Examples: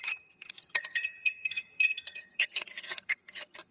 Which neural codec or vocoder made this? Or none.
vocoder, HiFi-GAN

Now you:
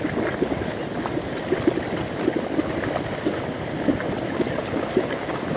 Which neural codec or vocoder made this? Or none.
none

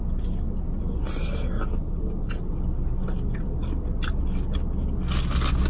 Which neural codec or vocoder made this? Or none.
none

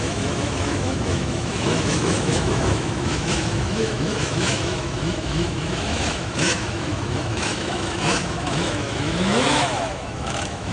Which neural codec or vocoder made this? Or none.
autoencoder, DAC-VAE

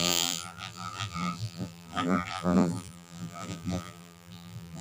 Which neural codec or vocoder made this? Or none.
vocoder, BigVGAN v2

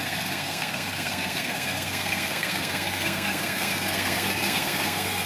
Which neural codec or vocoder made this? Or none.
codec, SNAC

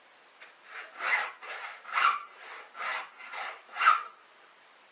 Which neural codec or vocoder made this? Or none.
none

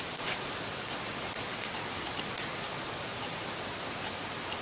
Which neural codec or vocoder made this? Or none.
none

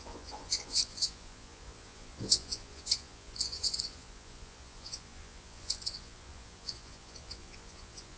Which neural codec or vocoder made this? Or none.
vocoder, Vocos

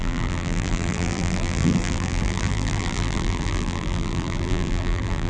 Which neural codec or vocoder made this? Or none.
vocoder, BigVGAN v2